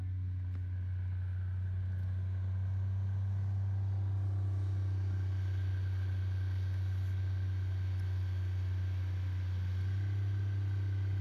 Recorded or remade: recorded